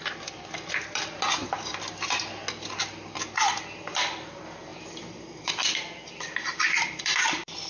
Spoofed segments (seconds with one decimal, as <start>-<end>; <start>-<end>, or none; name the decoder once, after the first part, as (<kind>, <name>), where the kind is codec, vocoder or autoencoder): none